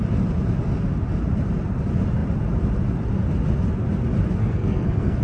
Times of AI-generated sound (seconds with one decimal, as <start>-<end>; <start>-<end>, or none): 4.4-5.2